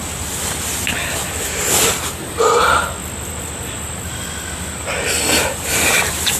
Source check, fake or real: real